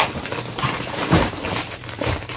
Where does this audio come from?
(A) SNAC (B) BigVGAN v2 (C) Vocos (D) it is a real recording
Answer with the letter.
B